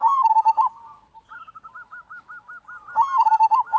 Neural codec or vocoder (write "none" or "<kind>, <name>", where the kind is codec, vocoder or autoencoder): none